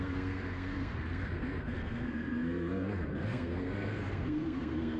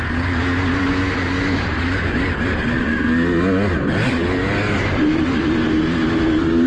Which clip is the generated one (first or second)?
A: first